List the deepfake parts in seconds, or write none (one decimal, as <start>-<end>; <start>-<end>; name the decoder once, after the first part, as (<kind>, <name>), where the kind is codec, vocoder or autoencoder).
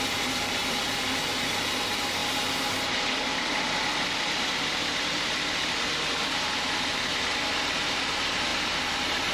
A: 0.0-2.2 (vocoder, BigVGAN v2); 2.8-9.3